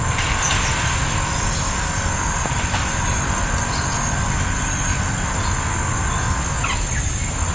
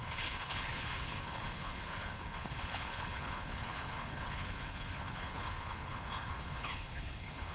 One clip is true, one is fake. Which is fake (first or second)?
second